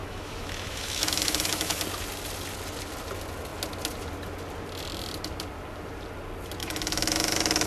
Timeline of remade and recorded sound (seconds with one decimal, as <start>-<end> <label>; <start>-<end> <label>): 0.0-1.8 remade; 1.8-6.6 recorded; 6.6-7.7 remade

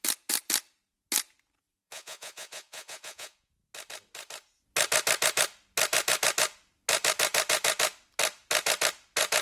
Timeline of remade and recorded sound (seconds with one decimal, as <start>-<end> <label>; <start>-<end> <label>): 0.0-1.8 recorded; 1.8-3.5 remade; 3.5-9.4 recorded

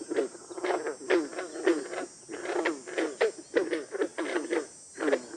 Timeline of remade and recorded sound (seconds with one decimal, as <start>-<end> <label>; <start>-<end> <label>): 0.0-5.4 recorded

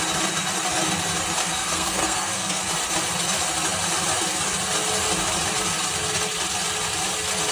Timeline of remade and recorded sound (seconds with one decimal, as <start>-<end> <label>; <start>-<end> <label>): 0.0-1.4 recorded; 1.4-2.6 remade; 2.6-7.5 recorded

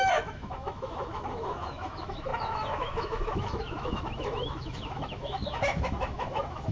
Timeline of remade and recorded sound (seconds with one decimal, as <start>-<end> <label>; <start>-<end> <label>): 0.0-6.7 remade